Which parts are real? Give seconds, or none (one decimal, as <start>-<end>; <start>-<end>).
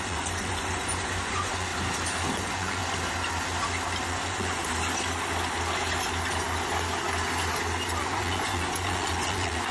1.7-2.4; 2.8-4.1; 4.6-8.0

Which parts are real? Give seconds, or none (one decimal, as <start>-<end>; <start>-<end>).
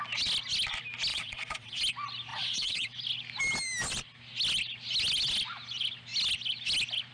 0.0-1.1; 1.8-2.3; 2.9-7.1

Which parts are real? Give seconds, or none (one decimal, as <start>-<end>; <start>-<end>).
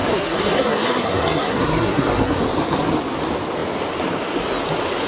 2.4-5.1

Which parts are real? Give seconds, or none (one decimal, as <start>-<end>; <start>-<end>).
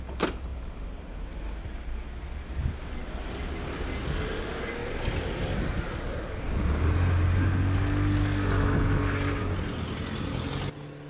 0.0-11.1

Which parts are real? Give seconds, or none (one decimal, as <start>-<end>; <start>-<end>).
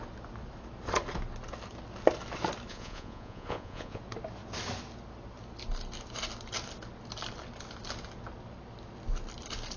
0.0-2.7; 4.0-9.8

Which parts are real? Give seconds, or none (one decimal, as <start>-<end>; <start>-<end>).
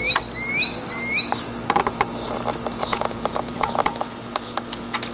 0.0-2.8; 3.7-5.1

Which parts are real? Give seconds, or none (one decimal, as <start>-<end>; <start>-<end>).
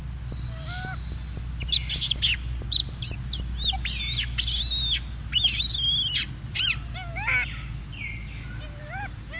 0.0-9.4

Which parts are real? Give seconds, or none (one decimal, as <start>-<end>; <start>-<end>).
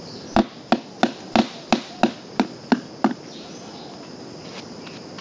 0.0-5.2